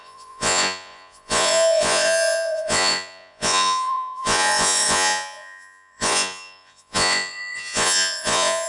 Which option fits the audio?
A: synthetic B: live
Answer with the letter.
A